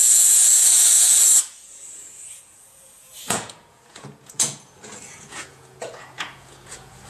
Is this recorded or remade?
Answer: remade